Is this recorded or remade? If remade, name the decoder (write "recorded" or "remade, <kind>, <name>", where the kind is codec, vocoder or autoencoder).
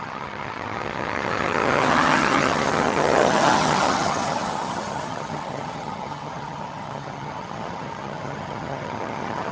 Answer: remade, vocoder, HiFi-GAN